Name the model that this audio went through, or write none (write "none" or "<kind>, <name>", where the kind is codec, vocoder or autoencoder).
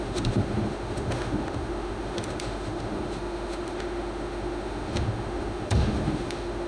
autoencoder, DAC-VAE